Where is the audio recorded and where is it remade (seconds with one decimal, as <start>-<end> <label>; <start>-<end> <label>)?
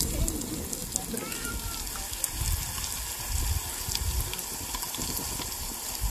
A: 0.0-6.1 recorded